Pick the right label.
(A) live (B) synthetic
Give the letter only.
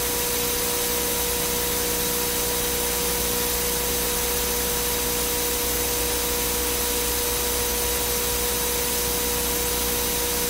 A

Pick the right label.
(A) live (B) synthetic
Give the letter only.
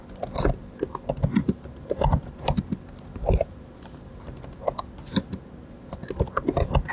A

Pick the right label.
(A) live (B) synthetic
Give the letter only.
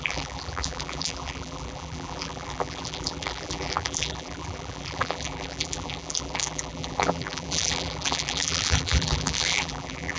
B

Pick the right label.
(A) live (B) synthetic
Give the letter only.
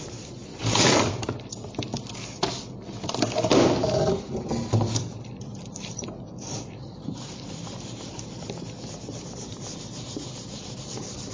B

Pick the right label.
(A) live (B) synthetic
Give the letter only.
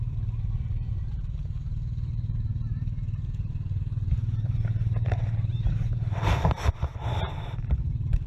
B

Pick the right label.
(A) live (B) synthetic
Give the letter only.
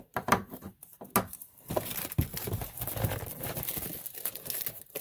A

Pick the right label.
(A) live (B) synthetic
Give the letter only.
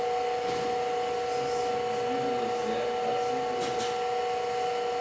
A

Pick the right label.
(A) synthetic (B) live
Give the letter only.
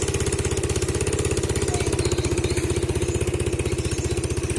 B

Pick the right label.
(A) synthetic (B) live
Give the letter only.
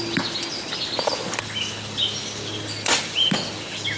B